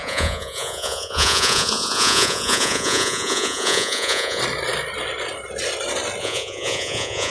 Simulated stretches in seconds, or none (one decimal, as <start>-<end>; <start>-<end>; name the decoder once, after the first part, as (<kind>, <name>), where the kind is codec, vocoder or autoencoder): 0.0-4.4 (vocoder, Vocos); 6.2-7.3